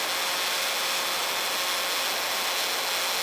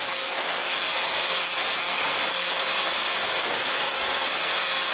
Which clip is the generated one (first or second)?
second